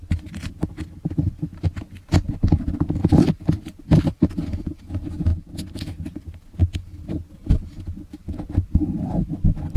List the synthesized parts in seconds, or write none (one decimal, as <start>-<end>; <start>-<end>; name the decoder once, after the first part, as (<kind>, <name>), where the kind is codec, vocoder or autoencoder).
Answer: 3.0-4.8 (vocoder, BigVGAN v2)